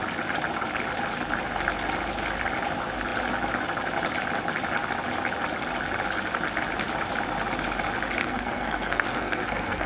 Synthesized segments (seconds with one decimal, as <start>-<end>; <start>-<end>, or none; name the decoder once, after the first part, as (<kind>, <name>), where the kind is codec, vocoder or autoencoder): 8.2-9.9 (codec, SNAC)